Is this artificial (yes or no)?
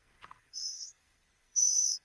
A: yes